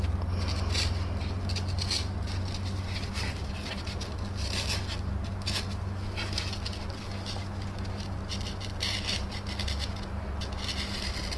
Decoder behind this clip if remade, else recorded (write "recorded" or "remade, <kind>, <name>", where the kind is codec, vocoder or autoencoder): recorded